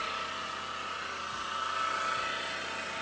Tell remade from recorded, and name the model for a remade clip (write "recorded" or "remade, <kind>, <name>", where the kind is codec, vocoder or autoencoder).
recorded